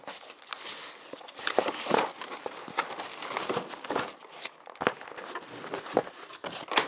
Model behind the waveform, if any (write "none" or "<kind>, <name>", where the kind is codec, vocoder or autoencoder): none